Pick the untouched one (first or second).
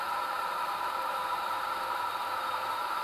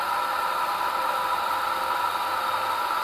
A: second